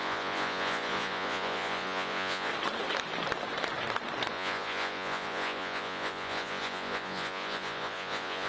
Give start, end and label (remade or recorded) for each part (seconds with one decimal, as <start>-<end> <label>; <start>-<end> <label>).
0.0-2.5 remade; 2.5-4.3 recorded; 4.3-8.5 remade